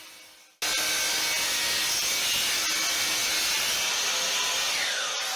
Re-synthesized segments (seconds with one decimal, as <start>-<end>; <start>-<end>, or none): none

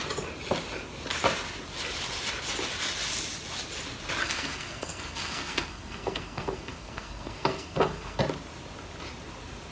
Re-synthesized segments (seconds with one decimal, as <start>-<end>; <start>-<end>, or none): 4.2-8.2

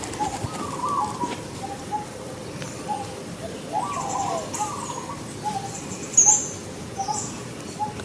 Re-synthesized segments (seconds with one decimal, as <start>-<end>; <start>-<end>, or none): 6.6-7.5